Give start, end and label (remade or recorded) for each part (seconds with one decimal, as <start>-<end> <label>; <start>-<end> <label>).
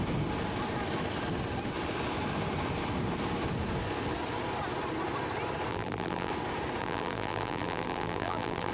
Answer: 0.0-5.7 recorded; 5.7-6.3 remade; 6.3-6.8 recorded; 6.8-8.7 remade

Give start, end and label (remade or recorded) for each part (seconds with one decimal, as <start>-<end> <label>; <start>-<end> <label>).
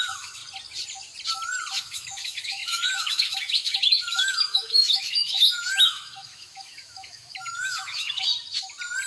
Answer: 0.0-0.4 remade; 0.4-1.7 recorded; 1.7-8.3 remade; 8.3-9.1 recorded